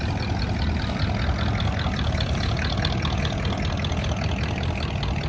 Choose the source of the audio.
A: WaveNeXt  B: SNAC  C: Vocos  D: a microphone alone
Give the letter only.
D